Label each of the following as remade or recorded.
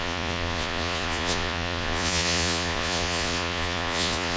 remade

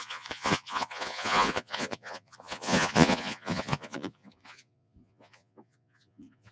remade